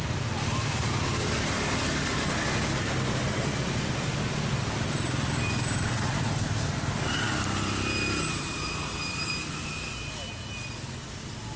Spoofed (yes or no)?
no